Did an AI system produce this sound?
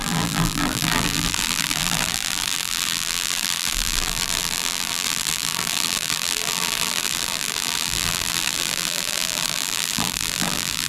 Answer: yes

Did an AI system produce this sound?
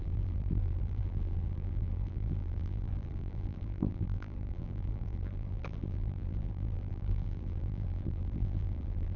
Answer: yes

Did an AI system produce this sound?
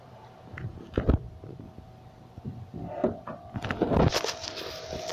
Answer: yes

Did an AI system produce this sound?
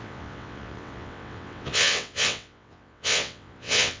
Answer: yes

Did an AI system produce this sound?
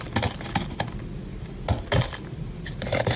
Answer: no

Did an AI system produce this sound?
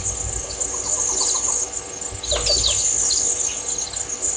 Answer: no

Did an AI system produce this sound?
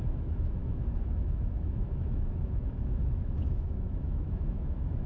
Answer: yes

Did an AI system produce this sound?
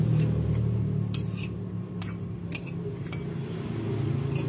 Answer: no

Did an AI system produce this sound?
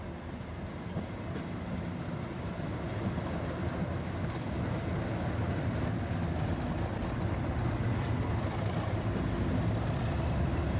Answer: no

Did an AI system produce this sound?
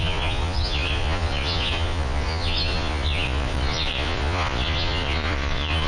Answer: yes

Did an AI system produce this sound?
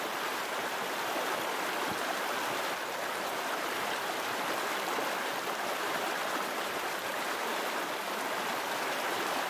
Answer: yes